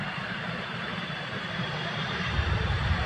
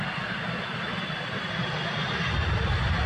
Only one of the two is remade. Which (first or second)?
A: first